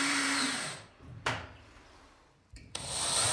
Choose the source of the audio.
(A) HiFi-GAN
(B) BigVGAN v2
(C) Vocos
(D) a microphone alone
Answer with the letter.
B